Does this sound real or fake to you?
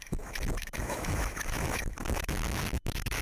fake